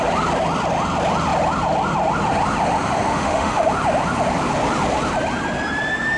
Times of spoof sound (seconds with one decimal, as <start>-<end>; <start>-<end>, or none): 3.1-3.7